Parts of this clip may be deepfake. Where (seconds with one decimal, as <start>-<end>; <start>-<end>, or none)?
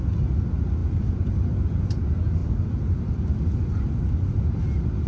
none